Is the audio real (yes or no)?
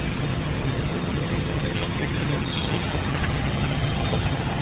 no